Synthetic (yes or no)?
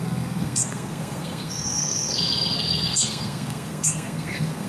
yes